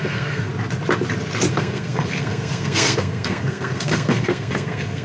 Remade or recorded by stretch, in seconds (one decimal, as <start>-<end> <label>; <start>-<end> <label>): 0.0-0.5 remade; 0.5-1.5 recorded; 1.5-5.0 remade